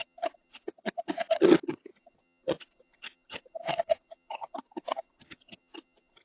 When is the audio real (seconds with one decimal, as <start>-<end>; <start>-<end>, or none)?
none